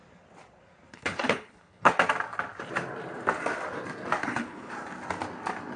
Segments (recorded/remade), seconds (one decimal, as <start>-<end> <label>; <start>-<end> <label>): 0.0-0.9 recorded; 0.9-1.9 remade; 1.9-4.2 recorded; 4.2-4.7 remade; 4.7-5.8 recorded